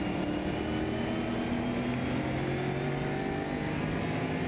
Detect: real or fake real